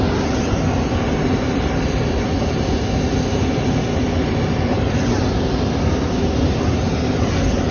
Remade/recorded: recorded